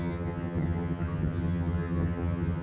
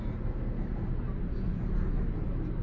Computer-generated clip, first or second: first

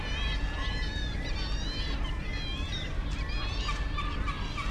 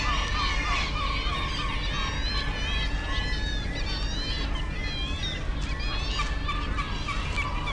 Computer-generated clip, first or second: first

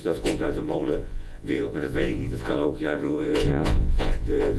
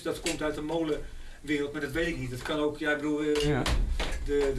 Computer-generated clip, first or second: first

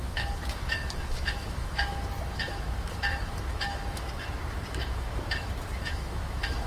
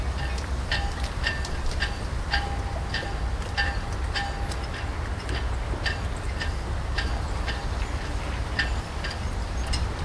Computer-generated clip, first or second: first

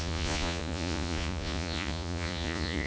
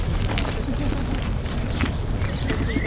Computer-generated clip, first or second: first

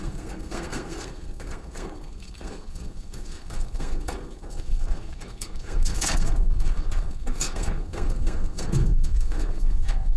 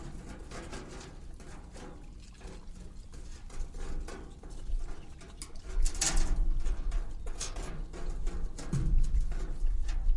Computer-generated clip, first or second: first